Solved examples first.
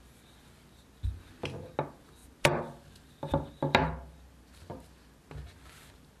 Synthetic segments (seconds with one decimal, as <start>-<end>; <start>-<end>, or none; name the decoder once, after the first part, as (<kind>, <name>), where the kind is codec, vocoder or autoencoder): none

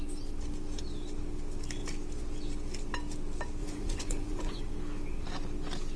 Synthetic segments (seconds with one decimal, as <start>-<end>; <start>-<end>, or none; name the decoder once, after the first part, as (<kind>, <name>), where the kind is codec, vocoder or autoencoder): 3.6-4.6 (vocoder, Vocos)

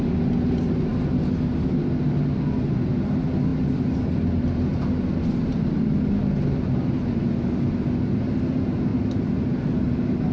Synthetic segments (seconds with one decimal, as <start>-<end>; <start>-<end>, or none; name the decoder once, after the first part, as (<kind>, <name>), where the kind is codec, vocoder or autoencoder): none

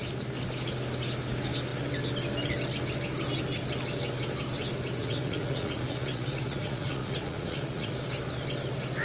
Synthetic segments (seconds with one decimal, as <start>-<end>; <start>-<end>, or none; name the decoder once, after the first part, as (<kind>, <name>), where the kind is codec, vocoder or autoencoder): 5.0-7.9 (vocoder, Vocos)

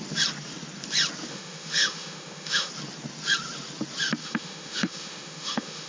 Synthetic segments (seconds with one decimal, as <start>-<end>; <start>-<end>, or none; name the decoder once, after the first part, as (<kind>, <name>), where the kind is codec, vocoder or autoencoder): 1.3-2.7 (autoencoder, DAC-VAE); 4.2-5.9

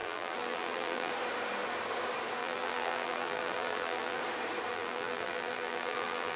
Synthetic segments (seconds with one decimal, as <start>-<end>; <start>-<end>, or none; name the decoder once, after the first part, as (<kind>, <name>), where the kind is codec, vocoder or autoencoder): 0.0-1.1 (vocoder, BigVGAN v2); 2.4-4.2; 4.7-6.4

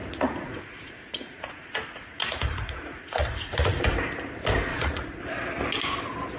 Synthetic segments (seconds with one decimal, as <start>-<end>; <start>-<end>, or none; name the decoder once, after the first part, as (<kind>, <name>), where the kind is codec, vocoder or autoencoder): 0.0-3.8 (vocoder, Vocos); 4.7-5.2

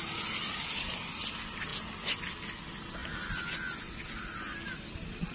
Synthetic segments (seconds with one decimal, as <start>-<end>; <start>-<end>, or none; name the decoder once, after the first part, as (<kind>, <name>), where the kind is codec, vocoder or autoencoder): none